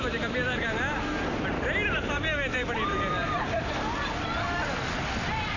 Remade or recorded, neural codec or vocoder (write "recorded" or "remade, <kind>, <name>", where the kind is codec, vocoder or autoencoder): recorded